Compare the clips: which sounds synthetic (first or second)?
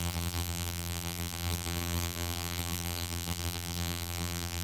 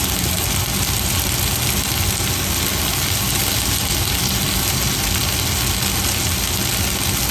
first